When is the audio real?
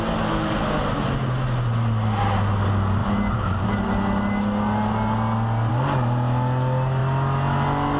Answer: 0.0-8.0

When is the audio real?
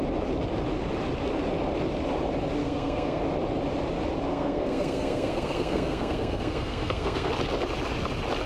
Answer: 0.0-2.6; 3.2-4.3; 7.3-8.5